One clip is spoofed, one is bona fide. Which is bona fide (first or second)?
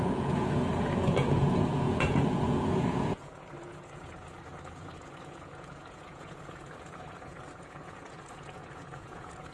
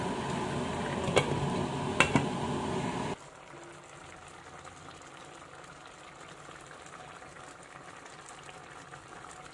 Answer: second